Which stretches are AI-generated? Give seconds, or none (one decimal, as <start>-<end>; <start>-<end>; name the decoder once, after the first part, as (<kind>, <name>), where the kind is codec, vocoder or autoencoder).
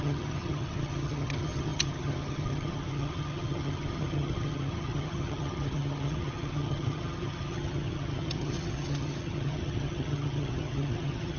0.0-11.4 (vocoder, HiFi-GAN)